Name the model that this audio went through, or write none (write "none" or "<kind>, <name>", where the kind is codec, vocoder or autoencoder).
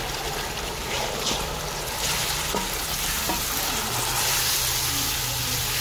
vocoder, BigVGAN v2